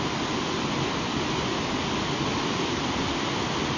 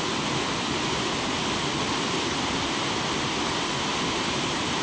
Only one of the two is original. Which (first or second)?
first